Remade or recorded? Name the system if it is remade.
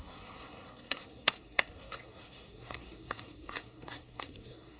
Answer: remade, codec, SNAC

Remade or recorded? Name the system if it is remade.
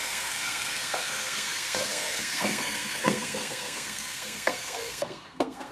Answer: remade, codec, SNAC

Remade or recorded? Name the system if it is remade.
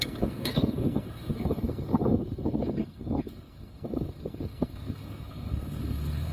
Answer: remade, codec, SNAC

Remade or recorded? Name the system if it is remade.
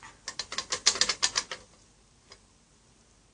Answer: recorded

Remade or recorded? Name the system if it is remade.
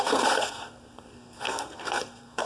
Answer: remade, codec, SNAC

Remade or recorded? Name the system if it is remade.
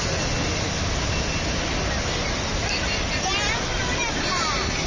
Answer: recorded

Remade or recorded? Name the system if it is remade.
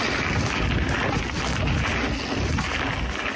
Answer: recorded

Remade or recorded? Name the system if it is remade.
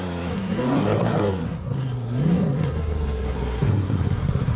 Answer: remade, codec, SNAC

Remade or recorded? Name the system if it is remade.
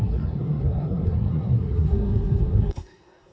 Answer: remade, codec, SNAC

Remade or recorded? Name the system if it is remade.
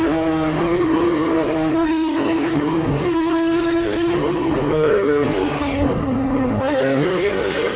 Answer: remade, codec, SNAC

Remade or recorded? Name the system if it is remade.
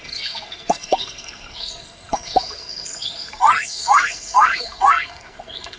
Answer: remade, codec, SNAC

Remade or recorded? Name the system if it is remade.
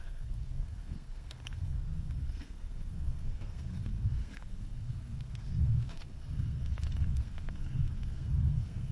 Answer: remade, codec, SNAC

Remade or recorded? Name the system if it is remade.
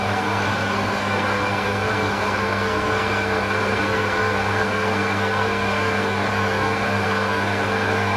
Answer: remade, codec, SNAC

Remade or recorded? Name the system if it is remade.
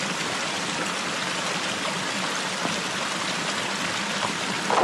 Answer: recorded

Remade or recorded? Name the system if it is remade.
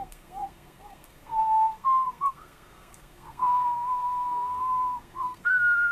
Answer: remade, codec, SNAC